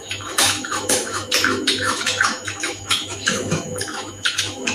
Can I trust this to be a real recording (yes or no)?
no